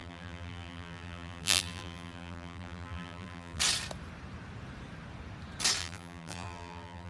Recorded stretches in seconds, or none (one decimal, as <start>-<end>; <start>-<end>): 3.6-5.8